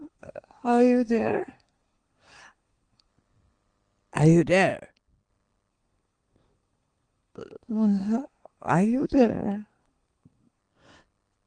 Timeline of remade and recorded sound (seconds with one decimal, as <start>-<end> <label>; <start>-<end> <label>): 0.0-3.1 remade; 3.1-5.7 recorded; 5.7-10.6 remade; 10.6-11.5 recorded